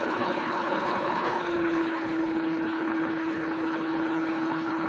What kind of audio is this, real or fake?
fake